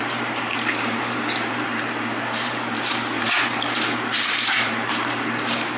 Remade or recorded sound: remade